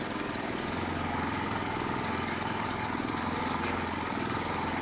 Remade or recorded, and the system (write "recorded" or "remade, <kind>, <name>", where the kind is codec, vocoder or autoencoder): remade, codec, DAC